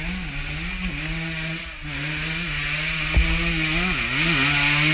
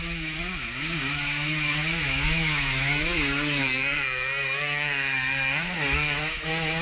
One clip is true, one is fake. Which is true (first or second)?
first